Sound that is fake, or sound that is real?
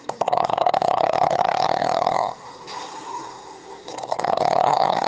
fake